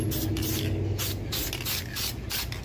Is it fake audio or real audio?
real